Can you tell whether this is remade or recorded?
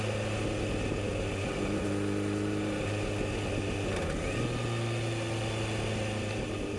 recorded